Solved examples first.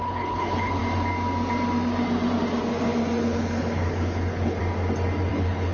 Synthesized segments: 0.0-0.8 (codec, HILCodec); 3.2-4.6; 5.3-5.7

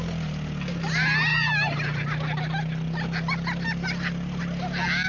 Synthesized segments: none

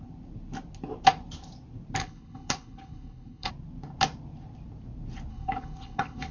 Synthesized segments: 2.0-3.5 (codec, HILCodec); 5.3-6.3

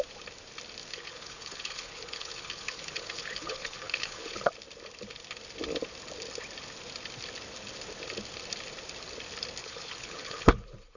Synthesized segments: 0.9-4.5 (codec, HILCodec); 9.6-11.0

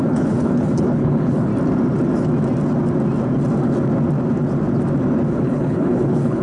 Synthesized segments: 0.0-1.5 (codec, HILCodec); 5.3-6.4

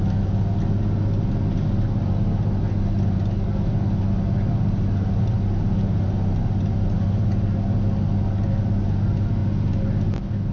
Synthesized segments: none

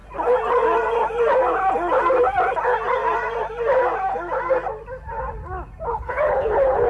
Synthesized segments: 5.9-6.9 (codec, HILCodec)

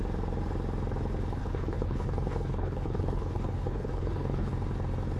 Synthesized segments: 1.4-4.5 (codec, HILCodec)